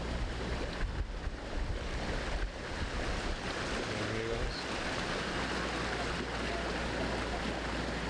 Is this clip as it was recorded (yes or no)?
yes